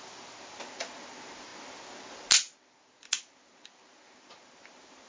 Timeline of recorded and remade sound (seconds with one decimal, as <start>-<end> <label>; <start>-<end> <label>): 0.0-5.1 recorded